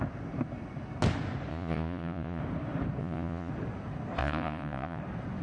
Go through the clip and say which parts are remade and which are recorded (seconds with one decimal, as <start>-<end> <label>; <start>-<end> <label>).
0.0-1.5 recorded; 1.5-2.4 remade; 2.4-3.0 recorded; 3.0-3.5 remade; 3.5-4.2 recorded; 4.2-5.0 remade; 5.0-5.4 recorded